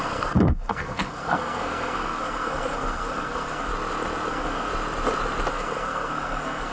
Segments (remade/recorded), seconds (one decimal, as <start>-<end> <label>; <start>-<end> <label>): 0.0-3.7 remade; 3.7-4.3 recorded; 4.3-4.7 remade; 4.7-5.5 recorded; 5.5-6.7 remade